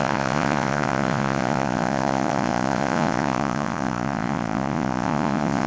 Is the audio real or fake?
fake